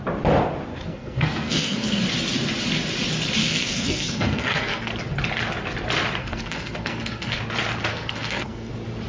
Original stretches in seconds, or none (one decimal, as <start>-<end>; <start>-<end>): 0.0-0.7; 2.0-3.4; 4.9-6.2; 7.4-7.9; 8.7-9.1